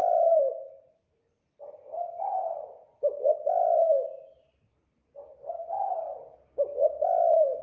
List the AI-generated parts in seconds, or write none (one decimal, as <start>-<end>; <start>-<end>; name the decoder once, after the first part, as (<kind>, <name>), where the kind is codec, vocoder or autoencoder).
none